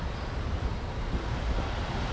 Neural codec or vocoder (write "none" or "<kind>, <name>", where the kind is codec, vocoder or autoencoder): none